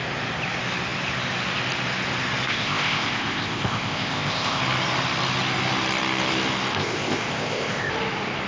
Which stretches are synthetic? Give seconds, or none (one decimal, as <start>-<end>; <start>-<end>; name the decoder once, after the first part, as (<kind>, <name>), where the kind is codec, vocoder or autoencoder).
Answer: 2.5-4.6 (codec, ZipCodec); 6.7-7.9